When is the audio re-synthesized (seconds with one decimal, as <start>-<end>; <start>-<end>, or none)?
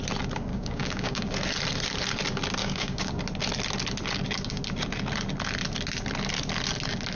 0.5-1.3; 2.6-3.2